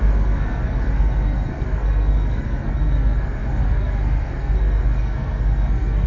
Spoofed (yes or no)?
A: yes